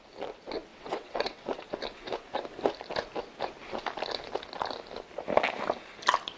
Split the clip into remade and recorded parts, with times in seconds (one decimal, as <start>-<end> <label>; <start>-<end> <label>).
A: 0.0-0.7 recorded; 0.7-1.8 remade; 1.8-6.4 recorded